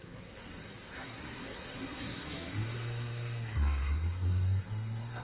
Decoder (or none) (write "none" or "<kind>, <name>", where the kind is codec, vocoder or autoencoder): codec, SNAC